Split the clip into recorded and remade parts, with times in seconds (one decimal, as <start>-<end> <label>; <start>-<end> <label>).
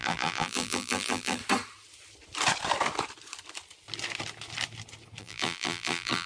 0.0-1.4 remade; 1.4-5.2 recorded; 5.2-6.3 remade